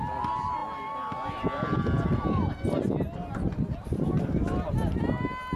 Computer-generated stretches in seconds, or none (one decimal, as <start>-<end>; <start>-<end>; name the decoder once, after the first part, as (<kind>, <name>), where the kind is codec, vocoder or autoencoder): none